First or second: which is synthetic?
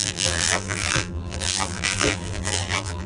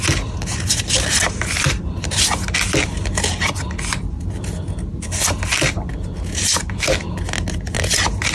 first